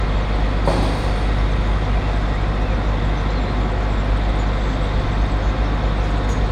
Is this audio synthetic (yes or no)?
no